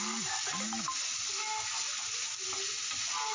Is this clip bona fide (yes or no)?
yes